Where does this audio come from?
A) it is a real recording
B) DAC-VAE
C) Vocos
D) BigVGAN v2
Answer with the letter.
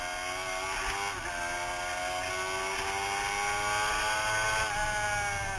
A